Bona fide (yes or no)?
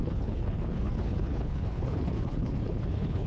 no